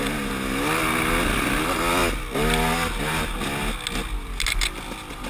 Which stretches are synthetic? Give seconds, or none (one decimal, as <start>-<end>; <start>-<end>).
none